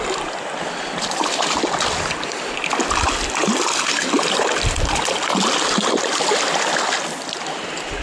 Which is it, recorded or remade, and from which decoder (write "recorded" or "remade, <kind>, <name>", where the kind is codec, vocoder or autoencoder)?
recorded